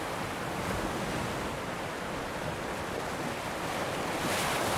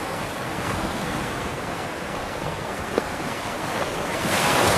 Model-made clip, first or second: second